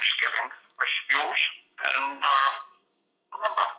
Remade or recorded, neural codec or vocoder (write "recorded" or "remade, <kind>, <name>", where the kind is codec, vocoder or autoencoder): remade, codec, SNAC